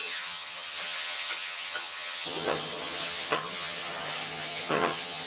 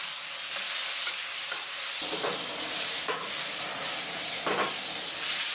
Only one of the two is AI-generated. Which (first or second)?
first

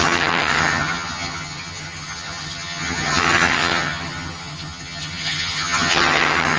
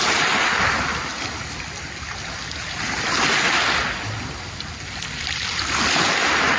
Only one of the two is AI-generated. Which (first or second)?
first